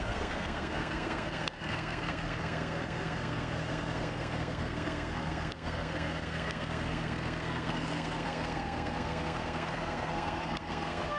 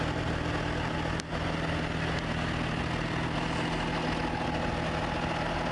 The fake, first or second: first